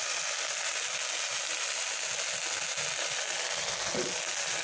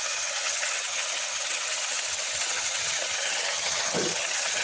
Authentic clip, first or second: first